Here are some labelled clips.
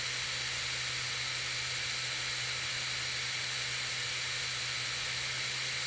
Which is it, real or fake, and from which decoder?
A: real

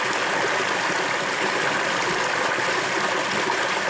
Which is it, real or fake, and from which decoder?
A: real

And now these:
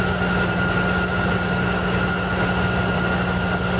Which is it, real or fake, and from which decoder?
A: real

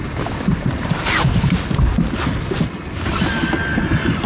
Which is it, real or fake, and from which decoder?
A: real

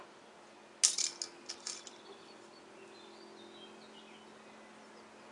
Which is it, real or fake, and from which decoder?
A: real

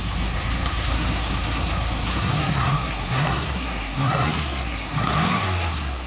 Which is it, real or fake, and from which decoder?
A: fake, codec, SNAC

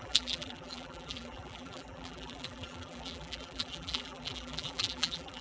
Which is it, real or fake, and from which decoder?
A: fake, vocoder, BigVGAN v2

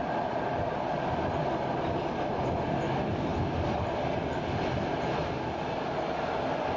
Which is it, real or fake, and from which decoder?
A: real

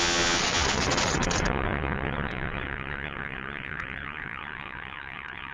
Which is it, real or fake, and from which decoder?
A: fake, vocoder, WaveNeXt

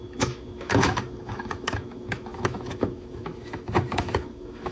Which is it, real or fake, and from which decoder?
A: fake, autoencoder, DAC-VAE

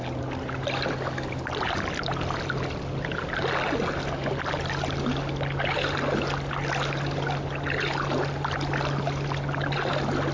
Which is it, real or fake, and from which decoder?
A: real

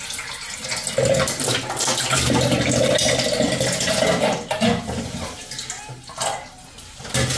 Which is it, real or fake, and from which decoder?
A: real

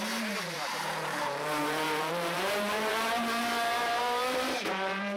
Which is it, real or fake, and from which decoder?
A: fake, vocoder, BigVGAN v2